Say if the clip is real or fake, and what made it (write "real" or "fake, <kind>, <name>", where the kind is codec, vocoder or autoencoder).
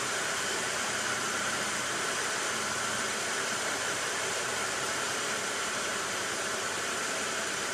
fake, vocoder, BigVGAN v2